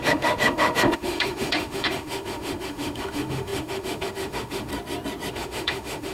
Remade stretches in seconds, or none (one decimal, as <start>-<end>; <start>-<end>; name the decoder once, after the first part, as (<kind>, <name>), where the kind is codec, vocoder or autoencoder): 0.0-4.7 (autoencoder, DAC-VAE); 5.3-6.1